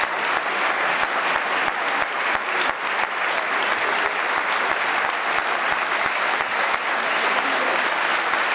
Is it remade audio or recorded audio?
recorded